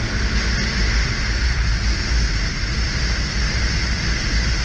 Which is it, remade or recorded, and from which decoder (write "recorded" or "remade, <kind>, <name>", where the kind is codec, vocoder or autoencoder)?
recorded